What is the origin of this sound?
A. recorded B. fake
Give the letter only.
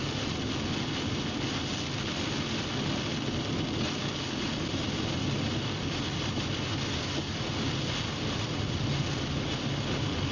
A